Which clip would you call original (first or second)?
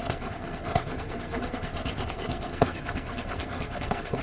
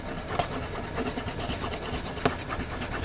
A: second